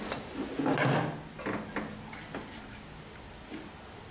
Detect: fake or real real